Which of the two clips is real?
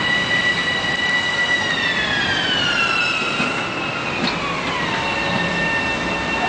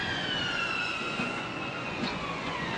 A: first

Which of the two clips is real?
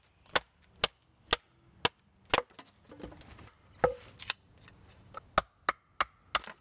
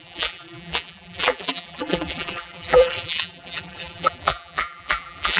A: first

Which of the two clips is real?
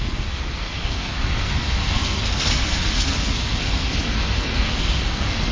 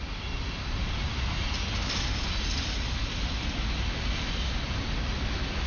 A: second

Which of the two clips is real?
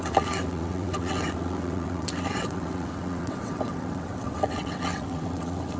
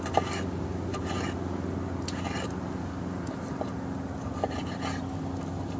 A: second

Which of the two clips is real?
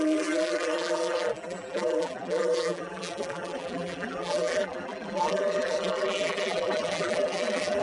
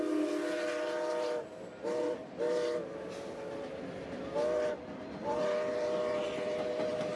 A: second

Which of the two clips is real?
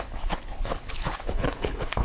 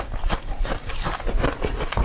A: second